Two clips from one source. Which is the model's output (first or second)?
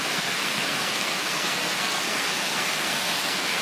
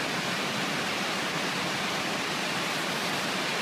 first